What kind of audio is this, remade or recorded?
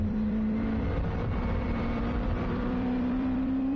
remade